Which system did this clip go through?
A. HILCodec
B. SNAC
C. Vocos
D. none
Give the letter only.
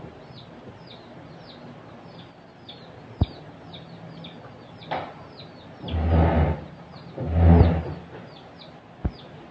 D